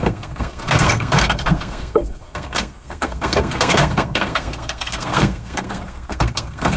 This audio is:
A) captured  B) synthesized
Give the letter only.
B